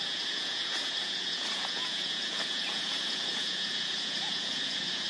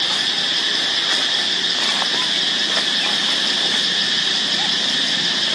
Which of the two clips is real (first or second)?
second